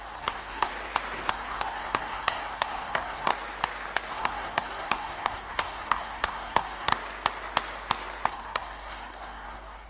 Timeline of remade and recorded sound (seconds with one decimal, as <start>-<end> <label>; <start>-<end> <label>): 0.0-0.7 remade; 0.7-1.3 recorded; 1.3-3.3 remade; 3.3-4.1 recorded; 4.1-6.9 remade; 6.9-8.3 recorded; 8.3-9.9 remade